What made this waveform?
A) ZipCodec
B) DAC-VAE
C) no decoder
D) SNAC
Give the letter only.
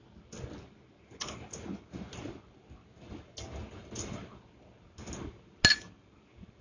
C